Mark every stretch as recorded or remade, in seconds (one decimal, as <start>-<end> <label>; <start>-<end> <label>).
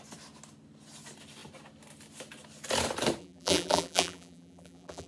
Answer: 0.0-3.2 recorded; 3.2-5.1 remade